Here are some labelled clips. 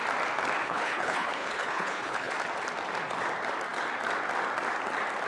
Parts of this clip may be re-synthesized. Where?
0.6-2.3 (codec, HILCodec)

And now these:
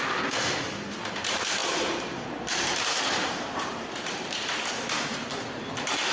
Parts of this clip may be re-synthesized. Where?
0.7-6.1 (vocoder, BigVGAN v2)

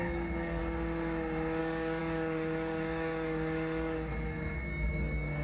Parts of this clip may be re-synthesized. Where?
0.0-0.6 (codec, DAC); 1.6-5.4

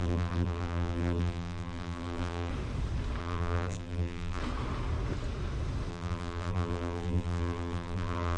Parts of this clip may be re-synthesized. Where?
0.0-2.5 (vocoder, BigVGAN v2); 3.2-4.4; 5.9-8.4